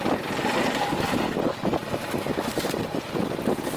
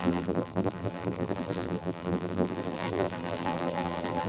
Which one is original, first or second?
first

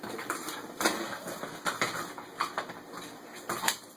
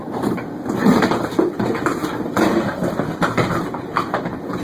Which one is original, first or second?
first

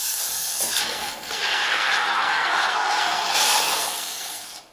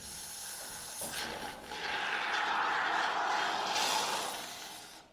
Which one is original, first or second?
second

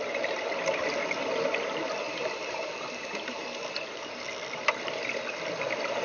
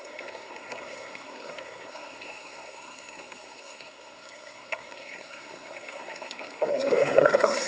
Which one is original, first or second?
first